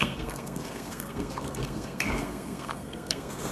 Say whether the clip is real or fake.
fake